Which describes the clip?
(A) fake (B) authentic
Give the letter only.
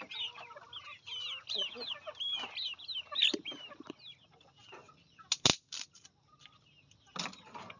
B